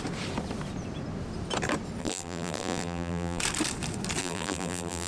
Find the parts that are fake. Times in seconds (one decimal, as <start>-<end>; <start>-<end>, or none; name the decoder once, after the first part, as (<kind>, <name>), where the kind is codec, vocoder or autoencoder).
2.0-3.4 (vocoder, BigVGAN v2); 4.2-5.1